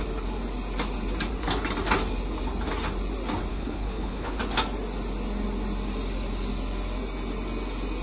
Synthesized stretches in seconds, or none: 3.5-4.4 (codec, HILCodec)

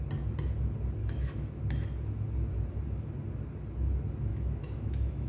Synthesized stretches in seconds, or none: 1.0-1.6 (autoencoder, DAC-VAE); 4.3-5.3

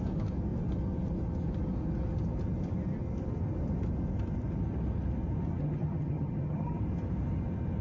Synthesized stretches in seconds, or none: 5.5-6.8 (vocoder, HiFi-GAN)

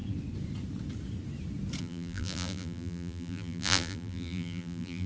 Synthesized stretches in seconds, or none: 1.8-5.1 (vocoder, BigVGAN v2)

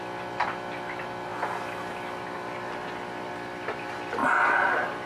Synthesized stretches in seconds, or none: none

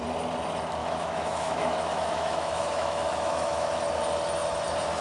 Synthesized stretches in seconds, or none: 0.8-3.8 (autoencoder, DAC-VAE)